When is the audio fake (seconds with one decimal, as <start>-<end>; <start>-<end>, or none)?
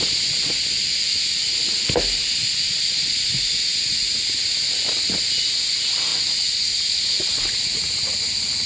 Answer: 6.1-8.0